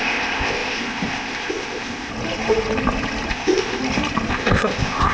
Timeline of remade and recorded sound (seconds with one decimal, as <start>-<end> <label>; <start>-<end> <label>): 0.0-2.1 remade; 2.1-3.3 recorded; 3.3-3.8 remade; 3.8-4.3 recorded; 4.3-5.1 remade